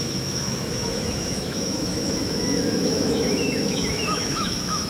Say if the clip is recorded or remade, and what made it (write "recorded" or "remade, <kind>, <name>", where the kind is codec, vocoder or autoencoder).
remade, autoencoder, DAC-VAE